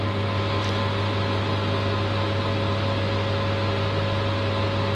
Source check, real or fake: real